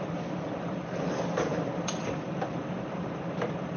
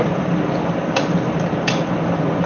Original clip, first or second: second